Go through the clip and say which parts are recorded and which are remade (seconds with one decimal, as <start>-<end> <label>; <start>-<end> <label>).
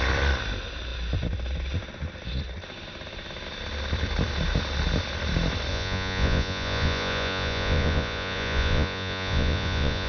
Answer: 0.0-5.7 recorded; 5.7-10.1 remade